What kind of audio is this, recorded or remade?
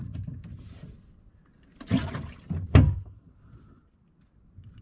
recorded